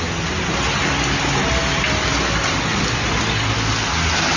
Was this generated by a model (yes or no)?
no